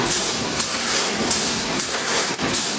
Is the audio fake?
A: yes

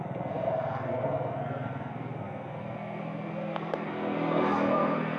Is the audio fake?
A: yes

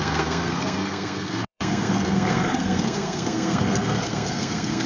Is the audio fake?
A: yes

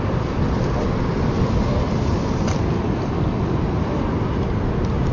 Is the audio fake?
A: no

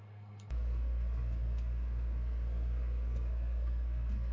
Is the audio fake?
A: yes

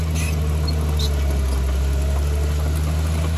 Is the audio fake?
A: no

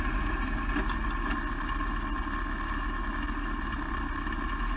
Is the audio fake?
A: no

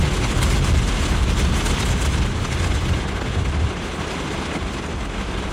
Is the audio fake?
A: no